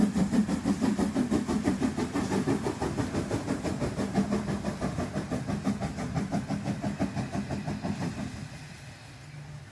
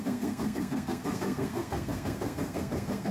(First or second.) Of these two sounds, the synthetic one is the second